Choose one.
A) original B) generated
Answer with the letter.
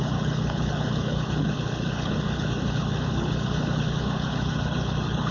B